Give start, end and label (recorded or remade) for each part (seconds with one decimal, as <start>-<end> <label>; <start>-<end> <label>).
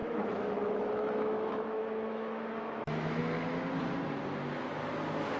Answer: 0.0-3.2 remade; 3.2-5.4 recorded